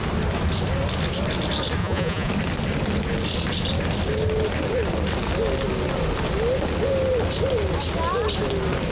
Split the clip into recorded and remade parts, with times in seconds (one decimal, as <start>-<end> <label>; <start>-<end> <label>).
0.0-1.8 recorded; 1.8-2.3 remade; 2.3-8.9 recorded